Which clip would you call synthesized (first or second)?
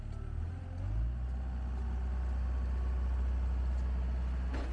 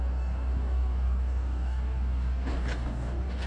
second